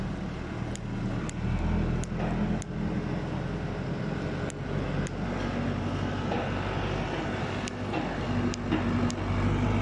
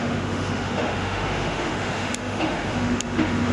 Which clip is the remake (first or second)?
second